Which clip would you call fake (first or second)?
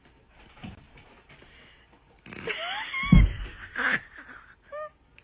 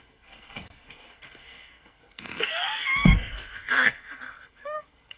second